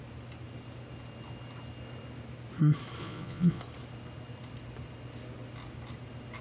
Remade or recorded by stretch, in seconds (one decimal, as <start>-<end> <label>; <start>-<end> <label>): 0.0-3.0 recorded; 3.0-3.6 remade; 3.6-6.4 recorded